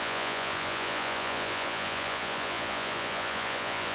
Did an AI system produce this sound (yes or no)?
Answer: yes